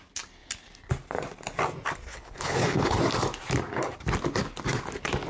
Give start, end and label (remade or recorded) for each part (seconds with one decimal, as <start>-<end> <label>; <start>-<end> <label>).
0.0-2.1 recorded; 2.1-3.0 remade; 3.0-5.3 recorded